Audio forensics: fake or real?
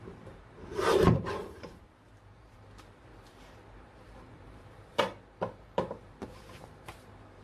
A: fake